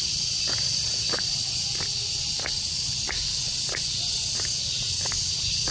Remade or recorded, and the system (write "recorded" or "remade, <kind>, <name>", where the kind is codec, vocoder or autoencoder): recorded